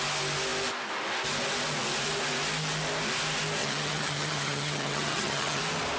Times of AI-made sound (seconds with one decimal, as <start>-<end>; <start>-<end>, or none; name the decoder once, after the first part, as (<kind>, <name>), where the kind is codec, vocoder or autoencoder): 3.6-5.6 (vocoder, HiFi-GAN)